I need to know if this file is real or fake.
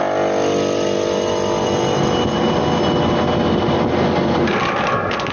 real